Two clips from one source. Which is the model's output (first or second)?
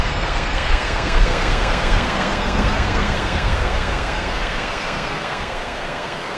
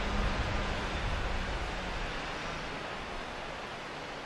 first